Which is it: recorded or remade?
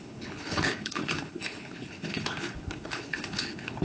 remade